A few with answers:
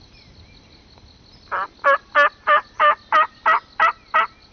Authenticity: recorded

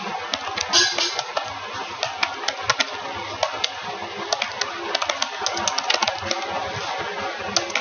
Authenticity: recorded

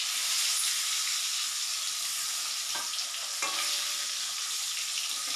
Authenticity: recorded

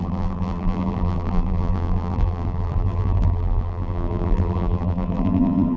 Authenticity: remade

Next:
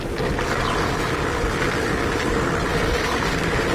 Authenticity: recorded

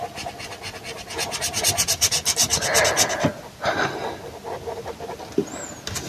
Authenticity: recorded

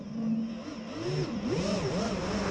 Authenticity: recorded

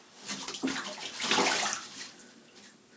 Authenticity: recorded